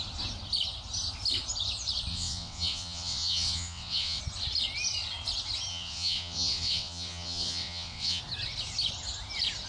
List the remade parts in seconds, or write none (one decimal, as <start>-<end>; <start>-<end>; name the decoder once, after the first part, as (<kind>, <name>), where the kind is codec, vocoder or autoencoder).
2.1-4.2 (vocoder, WaveNeXt); 5.7-8.2